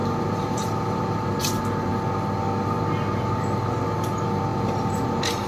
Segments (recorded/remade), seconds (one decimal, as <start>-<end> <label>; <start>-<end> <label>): 0.0-1.4 remade; 1.4-4.5 recorded; 4.5-5.5 remade